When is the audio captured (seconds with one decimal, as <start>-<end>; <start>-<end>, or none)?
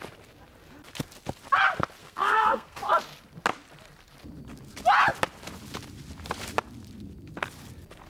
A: 0.0-2.0; 2.8-8.1